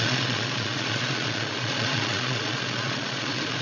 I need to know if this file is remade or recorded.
remade